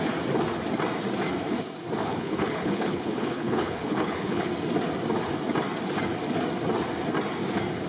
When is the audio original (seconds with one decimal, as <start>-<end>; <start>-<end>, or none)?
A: 0.0-2.0; 4.5-7.9